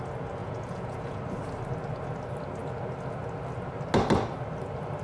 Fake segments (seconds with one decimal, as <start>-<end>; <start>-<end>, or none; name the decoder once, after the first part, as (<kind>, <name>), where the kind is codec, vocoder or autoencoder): 0.4-1.2 (vocoder, Vocos)